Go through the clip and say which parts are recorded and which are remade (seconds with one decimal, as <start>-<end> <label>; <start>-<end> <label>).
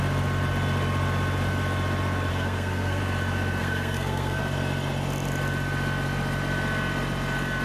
0.0-2.3 recorded; 2.3-3.0 remade; 3.0-3.6 recorded; 3.6-4.4 remade; 4.4-7.6 recorded